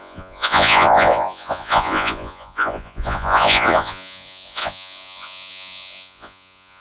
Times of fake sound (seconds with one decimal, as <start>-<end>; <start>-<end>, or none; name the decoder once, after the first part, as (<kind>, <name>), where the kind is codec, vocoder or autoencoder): 0.0-6.8 (vocoder, Vocos)